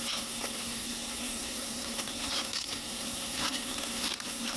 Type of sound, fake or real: fake